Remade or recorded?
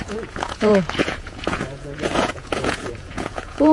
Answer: remade